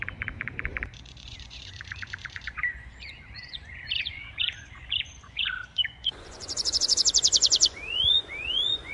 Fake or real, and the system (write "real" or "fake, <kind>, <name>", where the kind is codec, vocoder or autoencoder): fake, vocoder, Vocos